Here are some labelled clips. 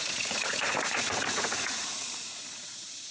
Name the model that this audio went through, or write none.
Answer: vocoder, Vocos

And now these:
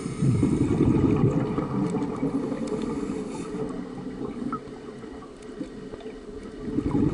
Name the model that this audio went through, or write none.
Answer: none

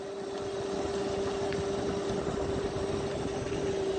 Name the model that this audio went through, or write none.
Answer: none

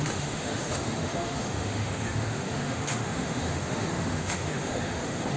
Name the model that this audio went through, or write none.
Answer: autoencoder, DAC-VAE